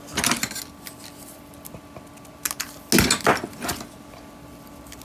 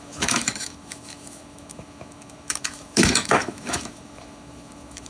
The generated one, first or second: second